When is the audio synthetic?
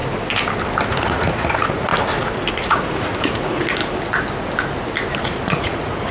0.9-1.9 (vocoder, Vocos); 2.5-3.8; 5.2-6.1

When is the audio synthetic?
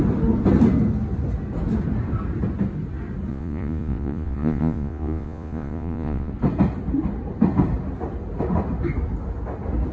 3.3-6.3 (vocoder, Vocos)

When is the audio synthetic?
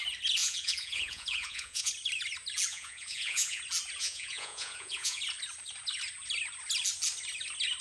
0.4-1.9 (vocoder, Vocos); 2.7-3.6; 4.0-5.2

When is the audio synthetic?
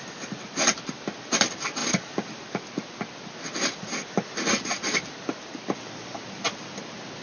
none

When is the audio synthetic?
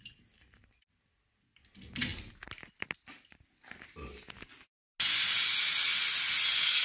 none